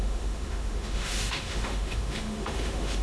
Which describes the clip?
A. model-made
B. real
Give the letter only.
A